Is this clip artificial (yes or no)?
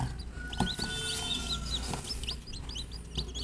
no